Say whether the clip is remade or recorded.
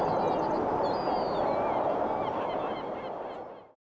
recorded